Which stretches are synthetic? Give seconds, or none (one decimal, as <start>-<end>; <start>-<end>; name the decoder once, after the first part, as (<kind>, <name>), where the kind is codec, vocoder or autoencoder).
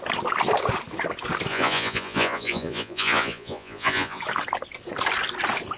1.5-4.2 (vocoder, Vocos)